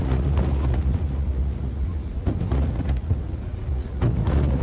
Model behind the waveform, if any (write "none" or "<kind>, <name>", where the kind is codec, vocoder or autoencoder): vocoder, Vocos